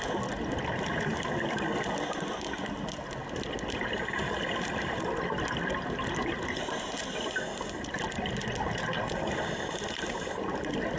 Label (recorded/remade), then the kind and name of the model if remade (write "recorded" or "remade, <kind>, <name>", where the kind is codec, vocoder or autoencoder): recorded